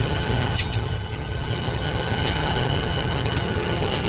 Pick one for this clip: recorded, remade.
remade